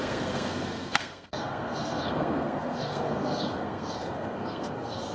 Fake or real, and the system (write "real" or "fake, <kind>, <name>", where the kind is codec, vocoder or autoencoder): fake, codec, SNAC